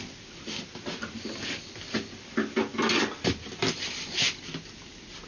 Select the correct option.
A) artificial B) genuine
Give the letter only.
B